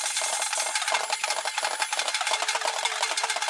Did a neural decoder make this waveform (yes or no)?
no